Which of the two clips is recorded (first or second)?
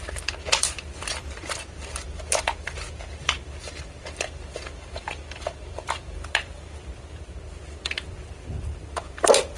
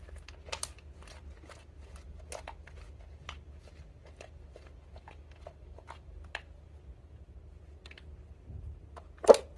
second